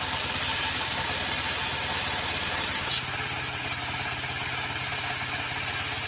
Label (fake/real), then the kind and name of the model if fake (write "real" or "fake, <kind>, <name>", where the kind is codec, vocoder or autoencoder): real